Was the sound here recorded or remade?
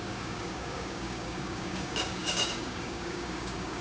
remade